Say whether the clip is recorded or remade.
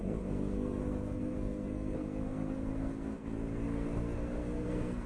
remade